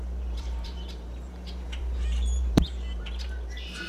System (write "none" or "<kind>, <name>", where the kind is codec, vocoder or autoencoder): vocoder, BigVGAN v2